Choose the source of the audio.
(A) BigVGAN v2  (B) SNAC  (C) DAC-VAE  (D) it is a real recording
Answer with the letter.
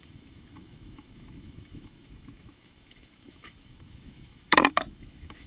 C